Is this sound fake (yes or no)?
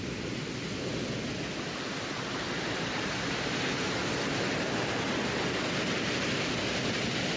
no